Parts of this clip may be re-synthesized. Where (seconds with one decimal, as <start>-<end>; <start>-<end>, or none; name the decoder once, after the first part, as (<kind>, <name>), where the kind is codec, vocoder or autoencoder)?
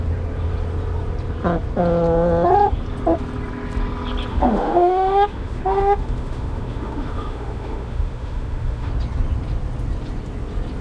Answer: 4.3-8.9 (autoencoder, DAC-VAE)